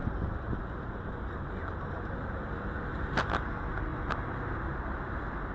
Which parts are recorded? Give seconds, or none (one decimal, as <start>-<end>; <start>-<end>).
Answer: 3.3-3.9; 4.5-5.5